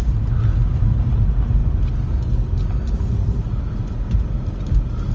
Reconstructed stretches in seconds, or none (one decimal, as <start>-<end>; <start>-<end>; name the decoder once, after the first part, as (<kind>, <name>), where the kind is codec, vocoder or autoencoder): none